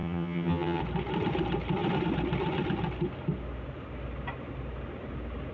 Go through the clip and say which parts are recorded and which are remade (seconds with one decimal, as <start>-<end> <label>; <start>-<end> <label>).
0.0-0.8 remade; 0.8-5.5 recorded